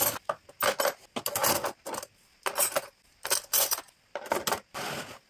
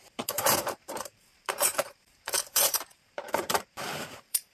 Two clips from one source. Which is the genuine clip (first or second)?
first